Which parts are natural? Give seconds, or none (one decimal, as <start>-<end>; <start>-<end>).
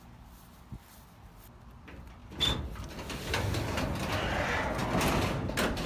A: 0.0-5.9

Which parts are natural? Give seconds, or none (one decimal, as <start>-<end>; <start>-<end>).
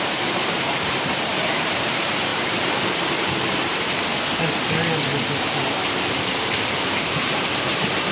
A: 4.1-5.4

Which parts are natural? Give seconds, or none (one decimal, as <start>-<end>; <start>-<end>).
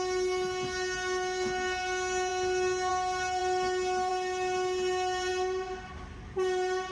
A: 0.0-6.9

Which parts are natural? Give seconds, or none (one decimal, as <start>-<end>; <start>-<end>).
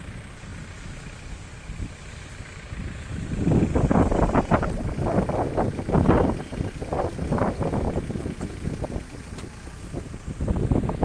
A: 0.0-0.5; 5.3-11.0